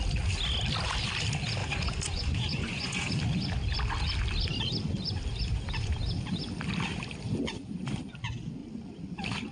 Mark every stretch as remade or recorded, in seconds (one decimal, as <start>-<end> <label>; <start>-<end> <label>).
0.0-1.6 recorded; 1.6-3.1 remade; 3.1-9.5 recorded